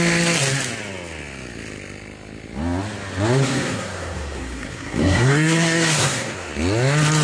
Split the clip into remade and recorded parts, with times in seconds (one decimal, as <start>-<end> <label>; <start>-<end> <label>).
0.0-3.4 recorded; 3.4-6.5 remade; 6.5-7.2 recorded